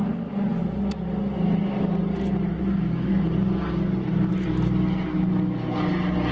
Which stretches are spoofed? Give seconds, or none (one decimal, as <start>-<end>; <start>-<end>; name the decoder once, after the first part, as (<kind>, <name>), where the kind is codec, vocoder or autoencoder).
none